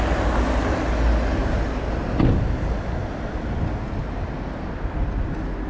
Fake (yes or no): no